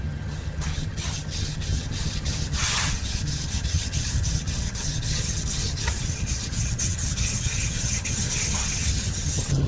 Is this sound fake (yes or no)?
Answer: yes